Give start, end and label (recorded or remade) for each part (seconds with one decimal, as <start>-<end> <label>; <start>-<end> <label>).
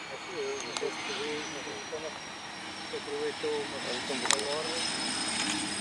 0.0-0.5 recorded; 0.5-4.0 remade; 4.0-5.8 recorded